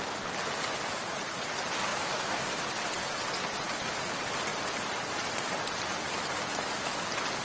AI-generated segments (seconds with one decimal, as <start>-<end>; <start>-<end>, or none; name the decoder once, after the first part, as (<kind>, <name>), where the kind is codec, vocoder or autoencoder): 1.9-2.6 (autoencoder, DAC-VAE)